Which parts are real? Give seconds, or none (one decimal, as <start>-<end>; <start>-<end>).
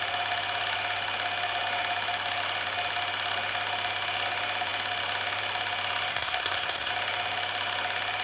0.0-6.1; 6.9-8.2